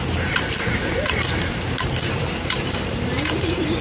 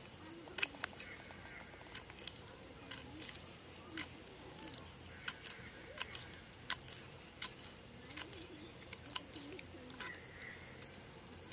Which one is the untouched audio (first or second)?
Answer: second